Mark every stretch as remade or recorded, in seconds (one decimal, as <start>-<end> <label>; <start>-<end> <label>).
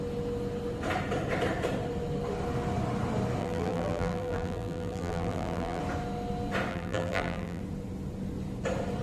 0.0-3.4 recorded; 3.4-5.8 remade; 5.8-6.7 recorded; 6.7-7.6 remade; 7.6-9.0 recorded